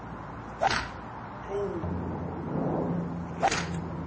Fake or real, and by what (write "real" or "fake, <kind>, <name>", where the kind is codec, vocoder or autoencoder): real